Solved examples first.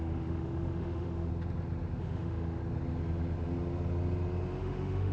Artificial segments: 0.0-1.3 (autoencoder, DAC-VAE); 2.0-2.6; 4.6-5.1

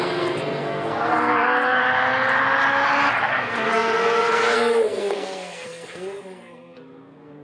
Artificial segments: 0.0-1.8 (codec, SNAC); 3.3-7.4

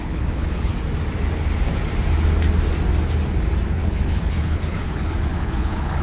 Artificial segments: 0.0-0.7 (codec, HILCodec); 3.7-6.0

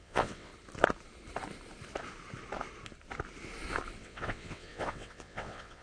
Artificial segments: 0.0-0.5 (vocoder, WaveNeXt); 4.0-5.8

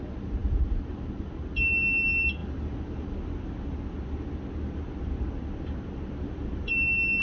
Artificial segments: none

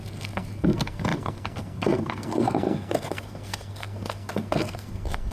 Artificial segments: 0.0-5.3 (codec, SNAC)

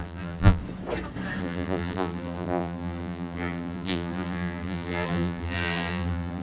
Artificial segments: 0.0-0.6 (vocoder, BigVGAN v2); 1.4-6.4

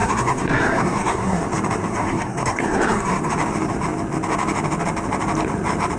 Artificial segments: 0.0-1.4 (codec, SNAC); 1.9-3.3